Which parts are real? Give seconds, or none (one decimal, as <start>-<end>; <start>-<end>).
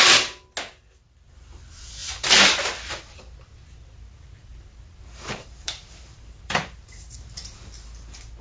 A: 0.0-4.4; 7.4-8.4